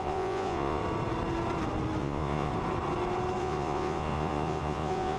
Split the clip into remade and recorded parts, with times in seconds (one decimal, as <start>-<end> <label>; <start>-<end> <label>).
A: 0.0-0.8 remade; 0.8-2.0 recorded; 2.0-2.5 remade; 2.5-3.4 recorded; 3.4-5.2 remade